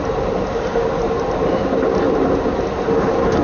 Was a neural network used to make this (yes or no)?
no